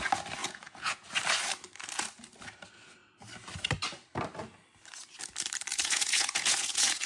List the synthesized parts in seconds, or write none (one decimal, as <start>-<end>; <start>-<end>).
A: 0.4-1.1; 5.7-7.1